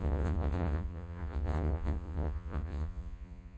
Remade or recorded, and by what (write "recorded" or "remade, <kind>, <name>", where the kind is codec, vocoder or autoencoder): remade, vocoder, Vocos